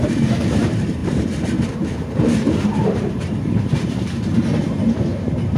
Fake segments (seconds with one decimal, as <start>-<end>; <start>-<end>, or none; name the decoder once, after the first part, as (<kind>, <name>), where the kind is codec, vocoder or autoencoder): 0.0-5.6 (vocoder, BigVGAN v2)